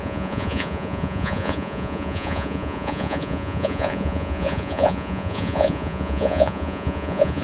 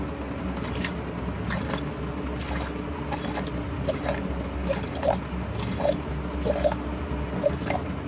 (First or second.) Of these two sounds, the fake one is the first